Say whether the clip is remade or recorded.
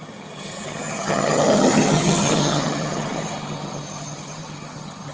remade